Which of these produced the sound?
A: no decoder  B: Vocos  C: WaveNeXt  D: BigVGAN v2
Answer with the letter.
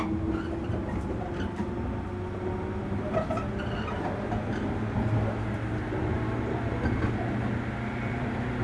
A